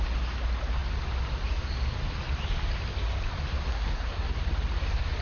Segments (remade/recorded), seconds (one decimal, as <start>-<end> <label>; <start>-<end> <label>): 0.0-3.7 recorded; 3.7-4.4 remade; 4.4-5.2 recorded